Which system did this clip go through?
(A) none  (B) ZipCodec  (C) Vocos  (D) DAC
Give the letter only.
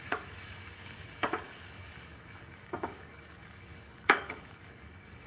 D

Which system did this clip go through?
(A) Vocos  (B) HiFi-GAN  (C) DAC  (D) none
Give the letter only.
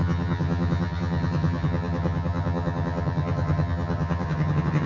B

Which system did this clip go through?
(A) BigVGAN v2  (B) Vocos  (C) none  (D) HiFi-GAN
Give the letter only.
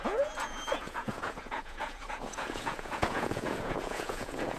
B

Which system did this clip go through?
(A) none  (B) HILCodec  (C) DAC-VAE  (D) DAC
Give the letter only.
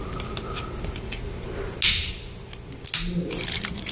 A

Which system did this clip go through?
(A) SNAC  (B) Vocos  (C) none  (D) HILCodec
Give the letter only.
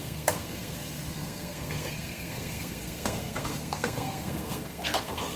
A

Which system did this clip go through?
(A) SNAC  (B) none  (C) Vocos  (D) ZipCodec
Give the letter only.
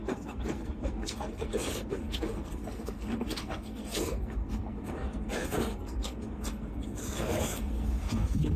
A